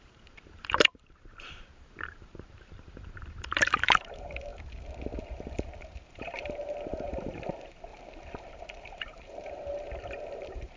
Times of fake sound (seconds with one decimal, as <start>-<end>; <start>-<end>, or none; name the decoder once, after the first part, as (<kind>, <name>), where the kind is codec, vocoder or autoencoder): 0.0-4.5 (vocoder, BigVGAN v2); 5.2-7.9; 8.5-10.8